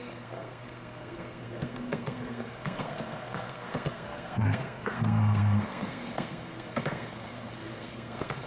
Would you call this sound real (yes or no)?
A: no